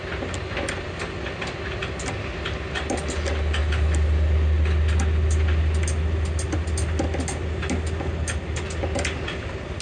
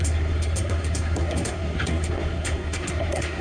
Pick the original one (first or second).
first